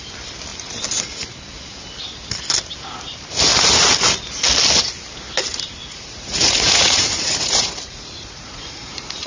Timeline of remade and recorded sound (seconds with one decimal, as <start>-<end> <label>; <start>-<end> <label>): 0.0-5.8 recorded; 5.8-9.3 remade